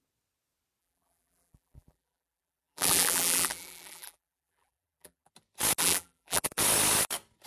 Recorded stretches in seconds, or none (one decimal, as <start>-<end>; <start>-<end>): 0.0-0.8; 5.3-5.8; 6.6-7.5